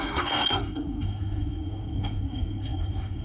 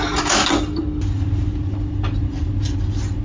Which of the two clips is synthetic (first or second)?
first